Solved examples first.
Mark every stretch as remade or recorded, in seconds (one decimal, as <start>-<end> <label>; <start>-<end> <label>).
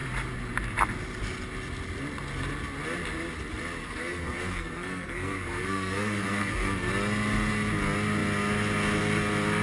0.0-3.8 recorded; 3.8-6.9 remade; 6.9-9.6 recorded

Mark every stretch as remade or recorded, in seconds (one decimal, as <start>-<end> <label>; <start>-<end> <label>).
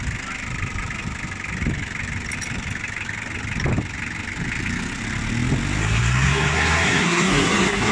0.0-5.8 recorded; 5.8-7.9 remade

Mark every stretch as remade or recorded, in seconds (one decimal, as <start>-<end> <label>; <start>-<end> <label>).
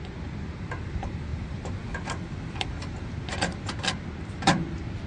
0.0-5.1 recorded